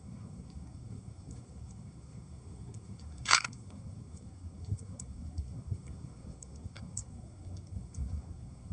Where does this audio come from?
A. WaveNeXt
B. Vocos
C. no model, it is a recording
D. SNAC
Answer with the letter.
D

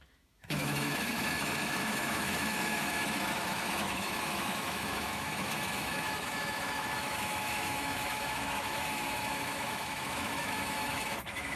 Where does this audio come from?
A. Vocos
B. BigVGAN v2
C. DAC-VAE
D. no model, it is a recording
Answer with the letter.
C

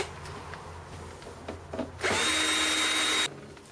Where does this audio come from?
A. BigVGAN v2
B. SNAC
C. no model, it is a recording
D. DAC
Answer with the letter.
C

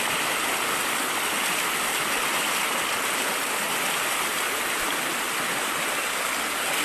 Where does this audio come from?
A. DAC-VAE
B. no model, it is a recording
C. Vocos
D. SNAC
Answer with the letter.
B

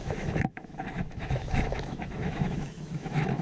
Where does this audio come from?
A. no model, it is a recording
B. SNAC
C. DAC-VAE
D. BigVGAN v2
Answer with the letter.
C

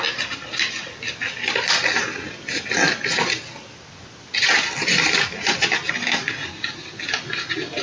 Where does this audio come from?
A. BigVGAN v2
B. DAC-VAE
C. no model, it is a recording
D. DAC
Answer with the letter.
C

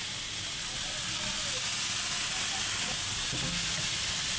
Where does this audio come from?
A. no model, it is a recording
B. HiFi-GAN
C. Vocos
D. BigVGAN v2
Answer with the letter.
A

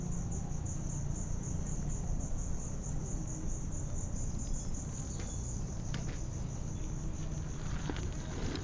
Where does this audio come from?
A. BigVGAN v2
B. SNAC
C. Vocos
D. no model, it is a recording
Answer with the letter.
D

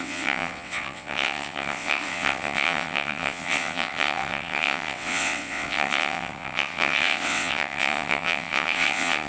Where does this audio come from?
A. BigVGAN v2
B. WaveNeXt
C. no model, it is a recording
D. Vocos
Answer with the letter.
B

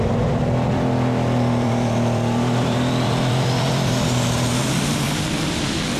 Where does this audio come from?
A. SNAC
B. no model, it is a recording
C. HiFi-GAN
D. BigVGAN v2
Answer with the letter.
D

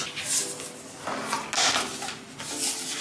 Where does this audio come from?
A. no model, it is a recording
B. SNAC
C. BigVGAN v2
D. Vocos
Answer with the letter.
A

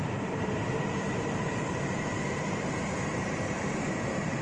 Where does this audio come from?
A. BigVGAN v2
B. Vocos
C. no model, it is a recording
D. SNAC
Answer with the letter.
A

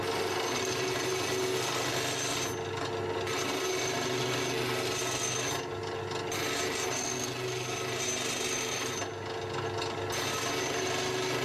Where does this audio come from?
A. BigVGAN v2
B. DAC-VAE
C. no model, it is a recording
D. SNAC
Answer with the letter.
C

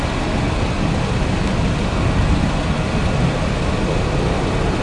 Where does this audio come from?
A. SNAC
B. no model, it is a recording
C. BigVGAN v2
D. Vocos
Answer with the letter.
B